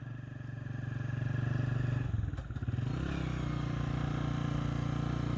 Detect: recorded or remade recorded